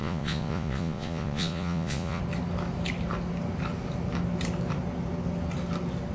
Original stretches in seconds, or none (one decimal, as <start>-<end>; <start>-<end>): 2.2-6.1